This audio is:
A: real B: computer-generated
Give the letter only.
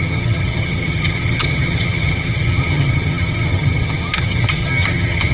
B